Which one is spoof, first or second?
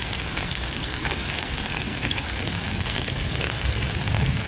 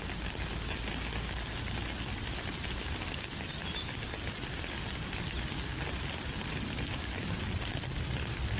first